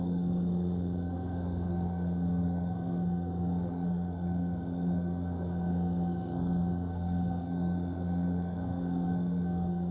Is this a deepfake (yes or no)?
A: yes